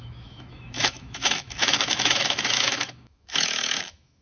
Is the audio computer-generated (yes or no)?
yes